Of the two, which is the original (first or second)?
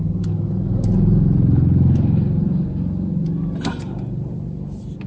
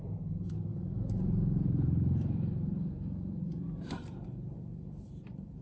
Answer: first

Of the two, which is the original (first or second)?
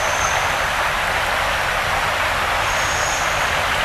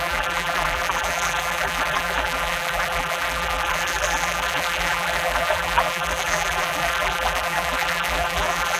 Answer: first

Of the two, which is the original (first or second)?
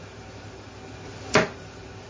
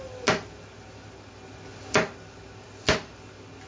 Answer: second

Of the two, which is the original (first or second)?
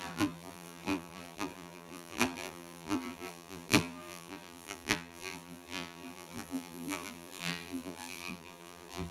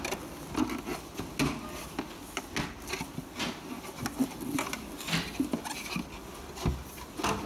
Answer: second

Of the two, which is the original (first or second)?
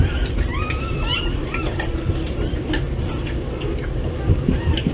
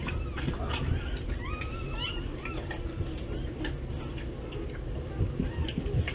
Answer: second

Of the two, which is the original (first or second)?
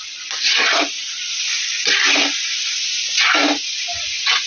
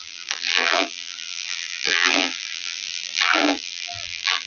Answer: first